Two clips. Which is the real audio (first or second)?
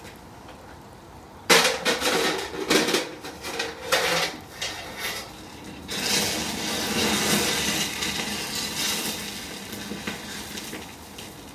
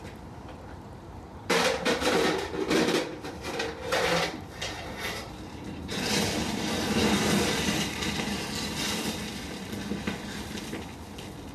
first